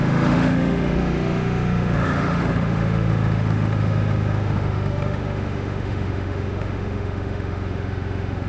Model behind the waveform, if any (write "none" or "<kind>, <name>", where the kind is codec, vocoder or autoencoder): autoencoder, DAC-VAE